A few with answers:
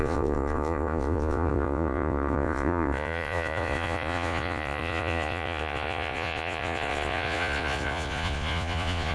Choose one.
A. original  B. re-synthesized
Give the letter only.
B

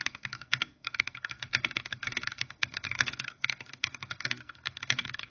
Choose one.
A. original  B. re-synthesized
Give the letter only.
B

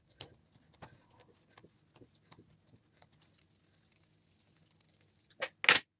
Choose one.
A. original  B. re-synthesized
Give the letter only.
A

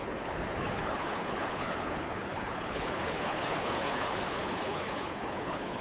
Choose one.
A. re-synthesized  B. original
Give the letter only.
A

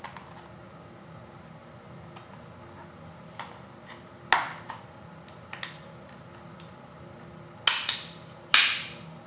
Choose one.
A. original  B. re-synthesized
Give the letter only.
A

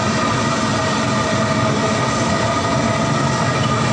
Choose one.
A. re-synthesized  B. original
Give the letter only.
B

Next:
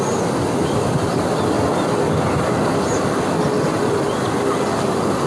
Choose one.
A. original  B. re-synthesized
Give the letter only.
A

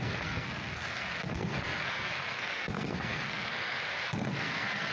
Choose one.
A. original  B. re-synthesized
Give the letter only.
B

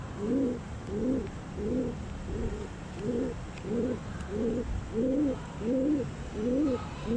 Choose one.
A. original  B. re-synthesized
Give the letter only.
A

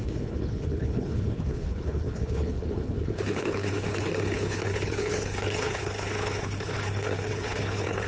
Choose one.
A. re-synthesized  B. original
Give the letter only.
A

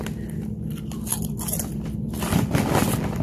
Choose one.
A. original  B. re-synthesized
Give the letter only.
A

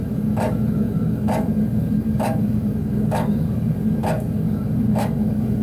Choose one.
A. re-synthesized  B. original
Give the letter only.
A